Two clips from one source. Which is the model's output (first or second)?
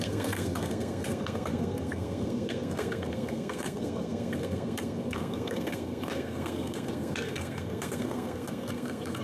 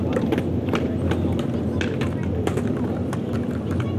first